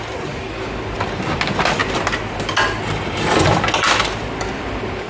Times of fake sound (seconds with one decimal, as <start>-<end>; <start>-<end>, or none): none